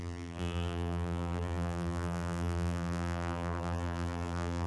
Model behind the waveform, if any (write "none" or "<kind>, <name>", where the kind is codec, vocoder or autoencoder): vocoder, BigVGAN v2